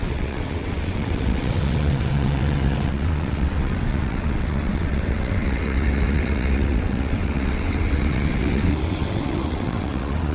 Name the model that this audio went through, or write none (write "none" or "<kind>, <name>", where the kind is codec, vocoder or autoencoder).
vocoder, WaveNeXt